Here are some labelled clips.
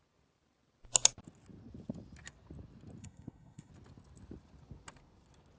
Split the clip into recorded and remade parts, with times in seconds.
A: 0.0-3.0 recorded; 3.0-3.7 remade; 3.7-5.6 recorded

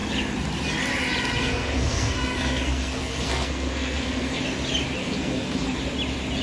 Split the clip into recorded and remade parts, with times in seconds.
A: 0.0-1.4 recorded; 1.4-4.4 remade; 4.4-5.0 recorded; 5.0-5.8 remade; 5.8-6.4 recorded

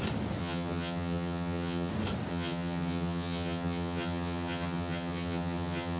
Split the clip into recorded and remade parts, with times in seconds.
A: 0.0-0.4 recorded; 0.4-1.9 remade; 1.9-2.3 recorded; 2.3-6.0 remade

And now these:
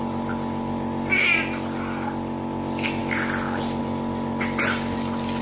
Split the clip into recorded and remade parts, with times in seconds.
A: 0.0-5.4 recorded